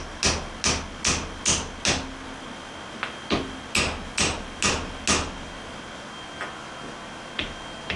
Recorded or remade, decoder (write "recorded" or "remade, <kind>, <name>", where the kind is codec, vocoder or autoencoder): recorded